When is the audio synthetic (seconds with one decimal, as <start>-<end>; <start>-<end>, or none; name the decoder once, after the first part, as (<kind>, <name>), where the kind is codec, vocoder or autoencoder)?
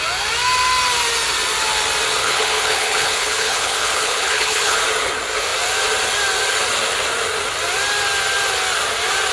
2.2-4.8 (codec, HILCodec)